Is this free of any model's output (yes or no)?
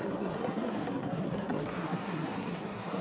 no